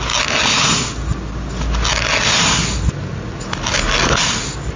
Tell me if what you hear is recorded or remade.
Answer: recorded